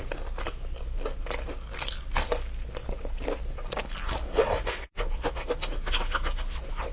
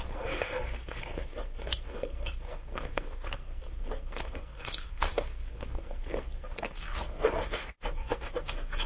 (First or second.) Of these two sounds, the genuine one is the first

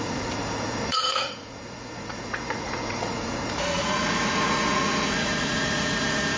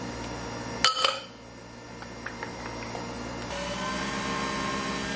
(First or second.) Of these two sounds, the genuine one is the second